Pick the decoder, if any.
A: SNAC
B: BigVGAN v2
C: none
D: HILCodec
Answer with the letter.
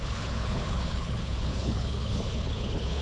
D